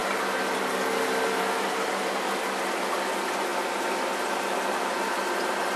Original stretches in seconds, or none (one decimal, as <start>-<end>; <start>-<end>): 0.0-5.8

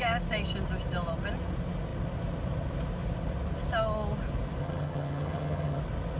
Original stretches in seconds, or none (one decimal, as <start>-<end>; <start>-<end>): 0.0-4.6; 5.8-6.2

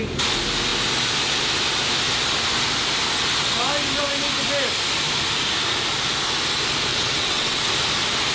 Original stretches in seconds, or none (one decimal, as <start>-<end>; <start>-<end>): 0.0-6.9; 7.7-8.3

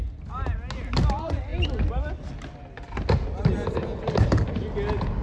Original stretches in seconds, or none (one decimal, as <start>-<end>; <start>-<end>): 0.0-5.2

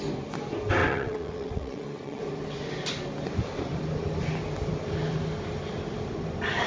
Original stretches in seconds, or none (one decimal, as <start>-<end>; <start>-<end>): 0.0-0.8; 2.2-6.7

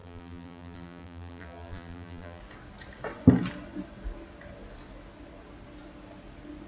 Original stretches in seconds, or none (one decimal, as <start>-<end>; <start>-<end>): 2.4-6.7